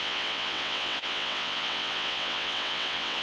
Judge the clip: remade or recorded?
remade